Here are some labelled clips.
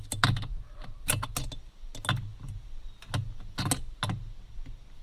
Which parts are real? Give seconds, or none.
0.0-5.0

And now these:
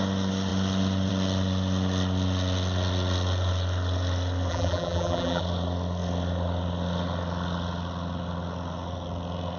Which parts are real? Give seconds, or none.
0.0-4.5; 5.4-9.6

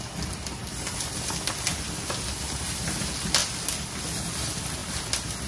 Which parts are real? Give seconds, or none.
0.0-5.5

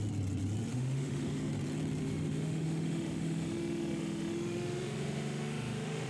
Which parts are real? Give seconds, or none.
0.0-0.7; 1.5-2.0

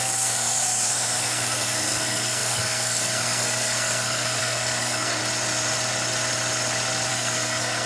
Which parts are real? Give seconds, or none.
5.2-7.1

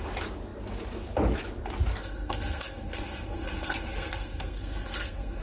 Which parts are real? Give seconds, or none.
0.0-2.0